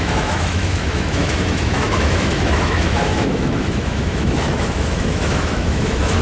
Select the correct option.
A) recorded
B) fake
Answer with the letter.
B